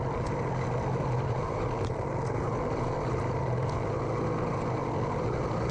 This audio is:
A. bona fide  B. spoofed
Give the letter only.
A